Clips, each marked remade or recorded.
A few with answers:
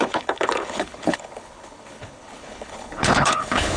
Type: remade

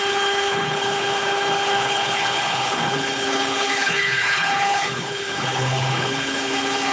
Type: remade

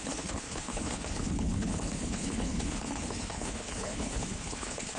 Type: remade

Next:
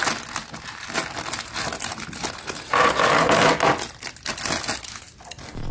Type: recorded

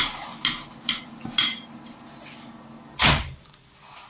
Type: recorded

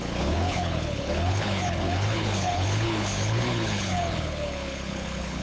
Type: remade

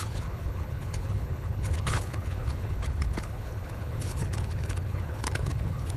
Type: remade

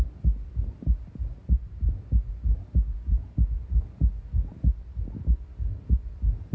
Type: recorded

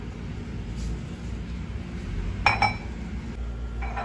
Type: recorded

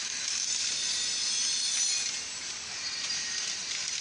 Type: recorded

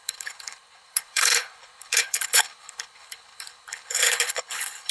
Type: remade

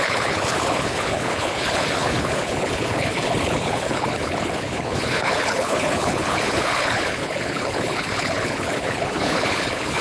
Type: remade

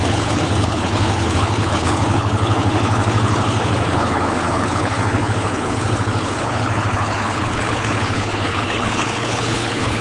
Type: remade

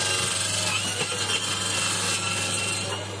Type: recorded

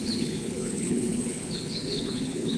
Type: remade